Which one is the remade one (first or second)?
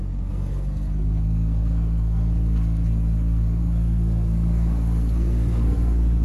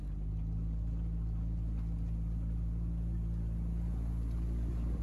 first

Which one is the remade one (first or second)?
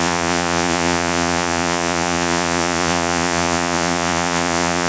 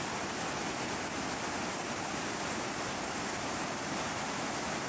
first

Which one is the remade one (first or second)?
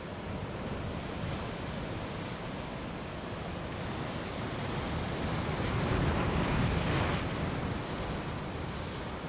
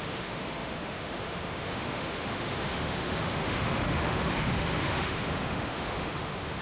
second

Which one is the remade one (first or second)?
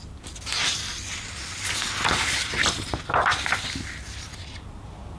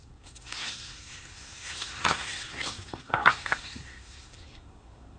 second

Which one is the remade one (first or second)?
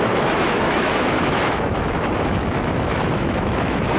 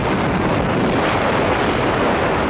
first